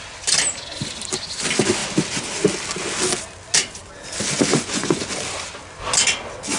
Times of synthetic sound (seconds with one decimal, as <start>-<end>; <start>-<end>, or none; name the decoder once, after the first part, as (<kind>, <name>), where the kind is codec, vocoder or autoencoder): 4.5-5.0 (vocoder, Vocos)